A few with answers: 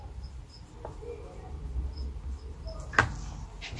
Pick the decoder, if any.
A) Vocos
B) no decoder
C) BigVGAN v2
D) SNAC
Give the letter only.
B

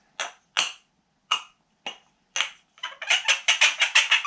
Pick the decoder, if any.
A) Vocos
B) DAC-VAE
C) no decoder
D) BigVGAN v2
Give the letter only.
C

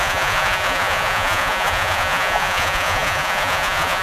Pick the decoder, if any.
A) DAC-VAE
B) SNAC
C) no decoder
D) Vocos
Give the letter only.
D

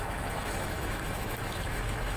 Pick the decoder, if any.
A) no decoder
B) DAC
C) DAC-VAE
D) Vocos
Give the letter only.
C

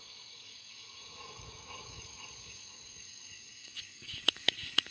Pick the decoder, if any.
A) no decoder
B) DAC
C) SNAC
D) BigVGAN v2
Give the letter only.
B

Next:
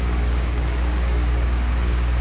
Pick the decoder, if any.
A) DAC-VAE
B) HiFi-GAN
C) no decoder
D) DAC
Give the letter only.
D